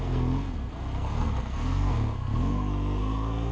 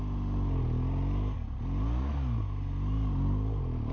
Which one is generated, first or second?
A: first